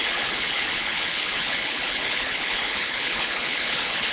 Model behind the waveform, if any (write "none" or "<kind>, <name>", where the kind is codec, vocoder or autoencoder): codec, HILCodec